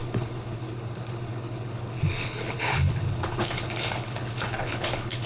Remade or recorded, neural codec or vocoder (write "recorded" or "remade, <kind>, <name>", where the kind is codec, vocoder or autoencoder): remade, codec, HILCodec